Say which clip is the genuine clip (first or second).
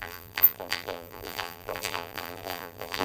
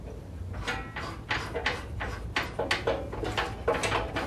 second